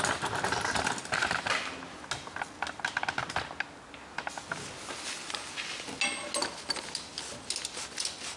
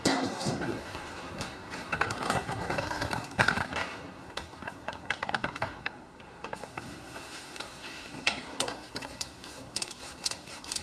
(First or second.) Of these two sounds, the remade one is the second